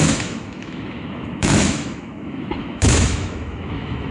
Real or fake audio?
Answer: fake